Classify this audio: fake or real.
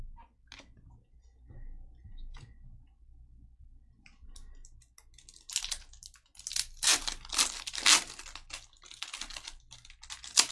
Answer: real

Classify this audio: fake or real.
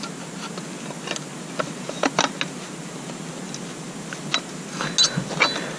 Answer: real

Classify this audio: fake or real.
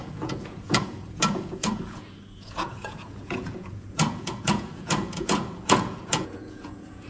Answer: fake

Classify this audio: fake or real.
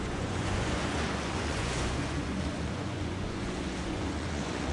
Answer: fake